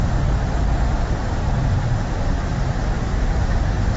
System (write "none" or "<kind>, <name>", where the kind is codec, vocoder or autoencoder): none